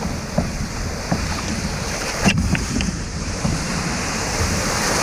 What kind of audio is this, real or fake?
fake